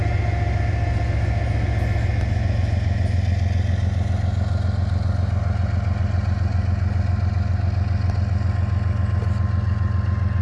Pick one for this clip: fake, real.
real